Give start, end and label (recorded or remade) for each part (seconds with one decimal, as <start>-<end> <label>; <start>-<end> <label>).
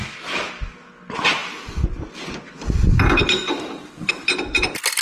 0.0-0.5 remade; 0.5-2.9 recorded; 2.9-4.1 remade; 4.1-5.0 recorded